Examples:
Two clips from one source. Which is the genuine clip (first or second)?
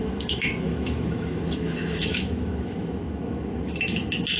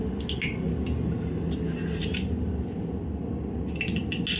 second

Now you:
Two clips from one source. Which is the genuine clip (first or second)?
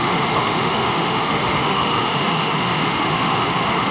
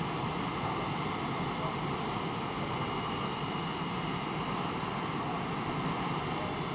second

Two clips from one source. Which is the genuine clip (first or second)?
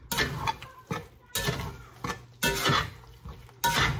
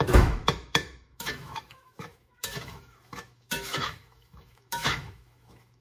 first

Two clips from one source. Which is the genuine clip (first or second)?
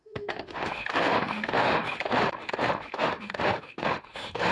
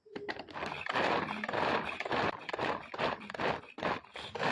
second